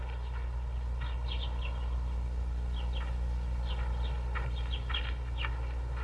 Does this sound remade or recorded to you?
recorded